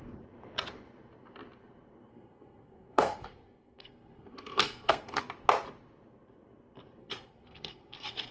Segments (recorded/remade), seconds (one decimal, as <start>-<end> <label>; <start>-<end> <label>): 0.0-2.1 recorded; 2.1-5.2 remade; 5.2-7.0 recorded; 7.0-8.3 remade